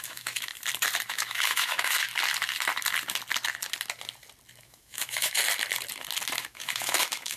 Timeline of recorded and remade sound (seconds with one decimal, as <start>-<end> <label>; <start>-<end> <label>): 0.0-0.5 remade; 0.5-1.1 recorded; 1.1-2.1 remade; 2.1-4.6 recorded; 4.6-5.4 remade; 5.4-6.4 recorded; 6.4-7.4 remade